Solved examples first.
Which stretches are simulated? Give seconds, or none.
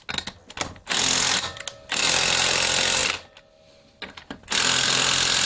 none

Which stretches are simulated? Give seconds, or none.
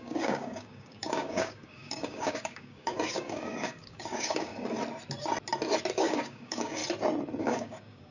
0.0-4.5 (codec, DAC); 5.9-6.8; 7.4-8.1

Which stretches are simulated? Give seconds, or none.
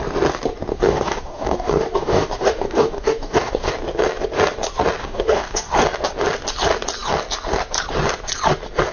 0.7-3.7 (codec, DAC); 5.0-5.7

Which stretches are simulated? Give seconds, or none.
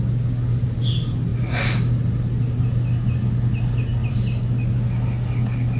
none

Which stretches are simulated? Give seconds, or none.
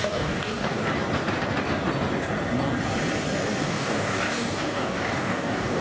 0.0-0.8 (codec, DAC); 3.6-5.8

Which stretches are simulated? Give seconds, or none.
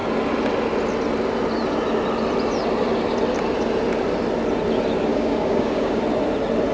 5.1-6.0 (codec, DAC)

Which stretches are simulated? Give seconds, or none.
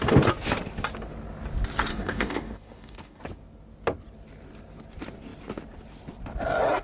1.9-3.2 (codec, DAC)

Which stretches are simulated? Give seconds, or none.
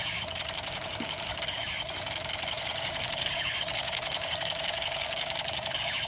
0.0-6.1 (codec, DAC)